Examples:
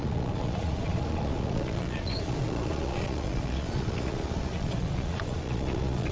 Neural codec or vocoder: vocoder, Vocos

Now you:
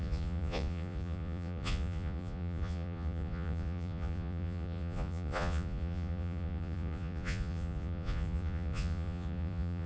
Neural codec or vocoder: vocoder, Vocos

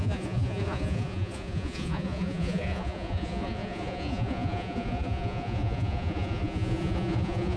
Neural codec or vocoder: vocoder, Vocos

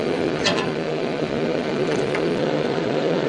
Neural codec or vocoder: vocoder, Vocos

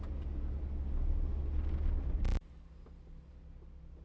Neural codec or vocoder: none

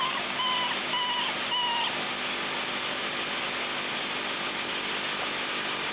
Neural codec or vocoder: none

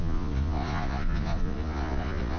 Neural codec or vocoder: vocoder, Vocos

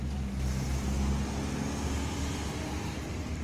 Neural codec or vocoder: none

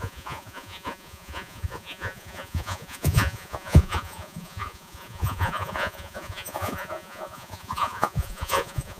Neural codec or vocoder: vocoder, Vocos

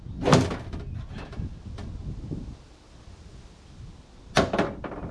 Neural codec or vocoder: none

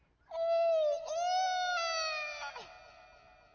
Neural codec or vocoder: none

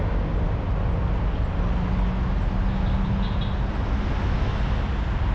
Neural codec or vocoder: none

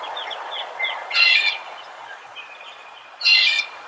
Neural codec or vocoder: vocoder, Vocos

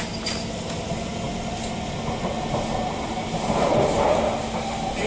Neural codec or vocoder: none